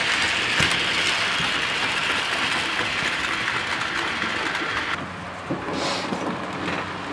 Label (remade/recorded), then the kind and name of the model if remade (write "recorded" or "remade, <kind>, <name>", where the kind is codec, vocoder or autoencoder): recorded